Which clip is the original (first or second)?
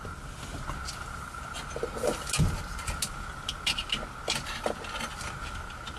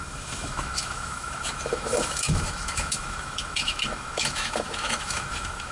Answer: first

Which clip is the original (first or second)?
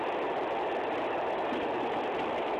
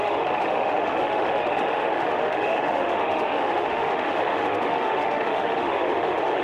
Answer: first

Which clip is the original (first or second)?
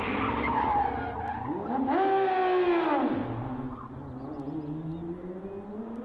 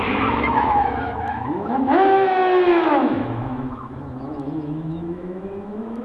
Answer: first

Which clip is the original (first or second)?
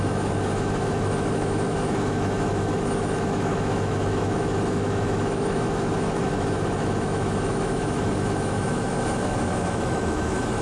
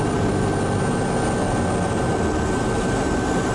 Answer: second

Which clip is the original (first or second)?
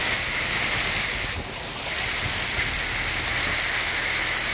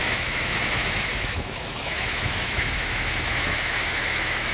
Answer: first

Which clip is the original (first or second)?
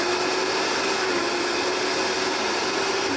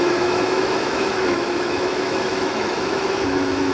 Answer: first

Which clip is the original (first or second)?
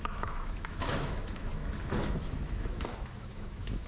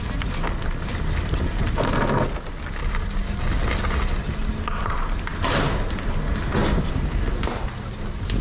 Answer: second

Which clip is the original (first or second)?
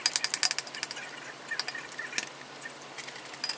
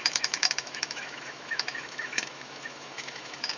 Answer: first